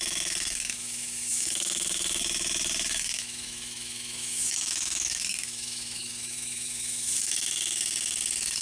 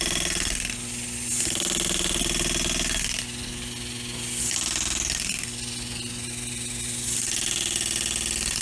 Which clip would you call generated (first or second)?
first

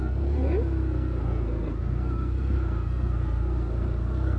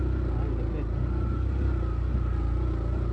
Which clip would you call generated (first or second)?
first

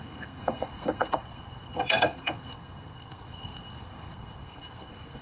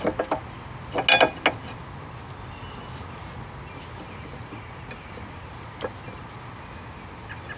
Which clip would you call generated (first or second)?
first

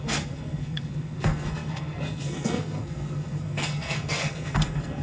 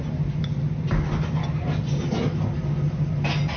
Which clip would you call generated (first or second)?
first